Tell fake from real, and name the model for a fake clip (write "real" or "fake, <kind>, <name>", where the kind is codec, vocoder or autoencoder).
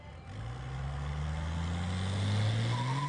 real